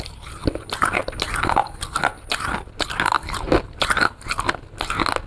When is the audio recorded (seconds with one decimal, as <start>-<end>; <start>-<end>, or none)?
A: 0.0-5.3

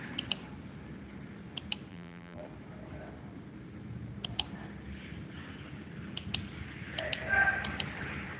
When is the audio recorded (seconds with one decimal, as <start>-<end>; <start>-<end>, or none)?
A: 0.0-1.9; 2.4-8.4